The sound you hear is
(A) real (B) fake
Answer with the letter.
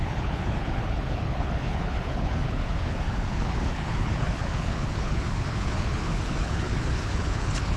B